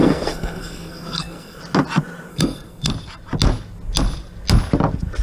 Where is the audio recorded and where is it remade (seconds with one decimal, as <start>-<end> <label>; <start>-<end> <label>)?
0.0-1.6 remade; 1.6-2.3 recorded; 2.3-2.9 remade; 2.9-5.2 recorded